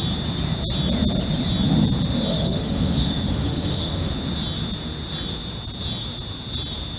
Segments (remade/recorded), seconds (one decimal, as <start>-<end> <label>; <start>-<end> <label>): 0.0-2.3 recorded; 2.3-4.1 remade; 4.1-7.0 recorded